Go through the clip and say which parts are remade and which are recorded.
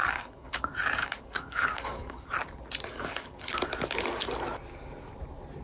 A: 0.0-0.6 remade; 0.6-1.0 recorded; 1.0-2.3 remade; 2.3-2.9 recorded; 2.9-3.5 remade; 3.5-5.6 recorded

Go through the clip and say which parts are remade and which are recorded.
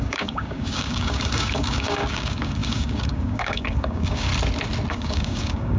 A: 0.0-4.3 remade; 4.3-4.9 recorded; 4.9-5.8 remade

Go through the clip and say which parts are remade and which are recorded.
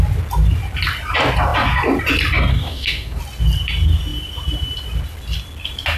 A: 0.0-2.5 recorded; 2.5-3.2 remade; 3.2-6.0 recorded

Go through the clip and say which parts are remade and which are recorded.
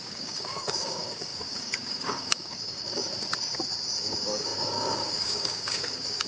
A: 0.0-3.0 remade; 3.0-4.0 recorded; 4.0-6.3 remade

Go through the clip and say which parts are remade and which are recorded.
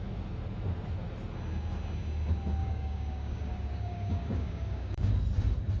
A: 0.0-2.6 recorded; 2.6-5.1 remade; 5.1-5.8 recorded